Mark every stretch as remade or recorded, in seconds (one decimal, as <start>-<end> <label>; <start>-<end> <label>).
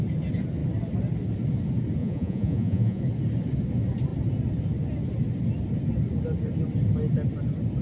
0.0-2.0 recorded; 2.0-3.0 remade; 3.0-7.8 recorded